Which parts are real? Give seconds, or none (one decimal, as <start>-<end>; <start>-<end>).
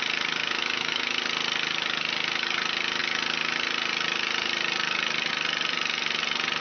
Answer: 0.0-0.4; 1.2-6.6